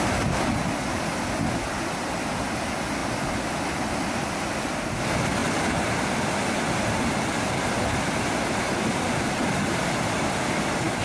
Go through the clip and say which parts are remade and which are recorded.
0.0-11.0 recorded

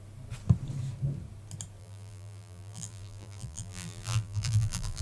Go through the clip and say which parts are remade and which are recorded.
0.0-1.8 recorded; 1.8-5.0 remade

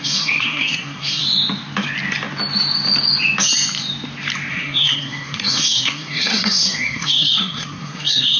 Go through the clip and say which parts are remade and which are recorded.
0.0-1.2 remade; 1.2-4.5 recorded; 4.5-8.4 remade

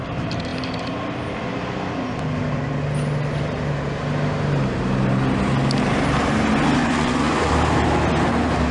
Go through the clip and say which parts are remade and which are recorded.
0.0-6.8 recorded; 6.8-7.5 remade; 7.5-8.7 recorded

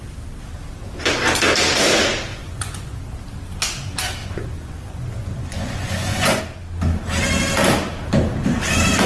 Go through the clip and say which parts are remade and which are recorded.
0.0-2.3 recorded; 2.3-3.0 remade; 3.0-4.2 recorded; 4.2-6.4 remade; 6.4-9.1 recorded

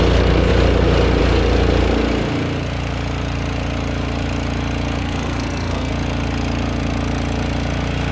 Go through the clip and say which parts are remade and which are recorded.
0.0-5.0 recorded; 5.0-5.9 remade; 5.9-8.1 recorded